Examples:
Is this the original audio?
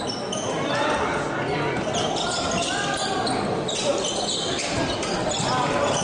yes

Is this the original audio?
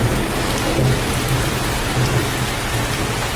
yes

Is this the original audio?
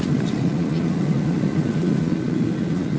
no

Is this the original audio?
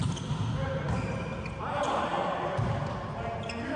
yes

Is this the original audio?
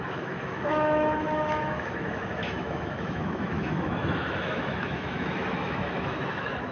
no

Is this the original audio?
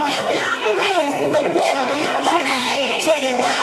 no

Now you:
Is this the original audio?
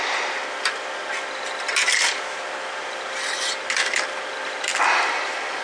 yes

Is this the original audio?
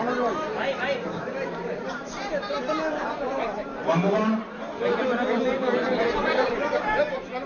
no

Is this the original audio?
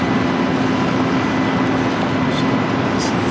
yes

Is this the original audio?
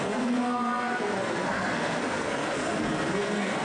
no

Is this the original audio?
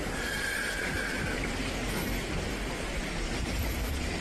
no